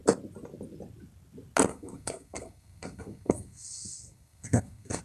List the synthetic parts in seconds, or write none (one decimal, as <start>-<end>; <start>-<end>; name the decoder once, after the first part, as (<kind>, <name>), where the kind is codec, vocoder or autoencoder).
1.7-5.0 (codec, SNAC)